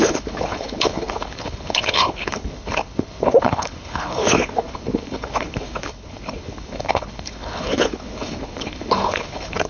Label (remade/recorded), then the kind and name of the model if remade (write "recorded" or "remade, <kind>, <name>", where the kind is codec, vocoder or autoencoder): remade, codec, HILCodec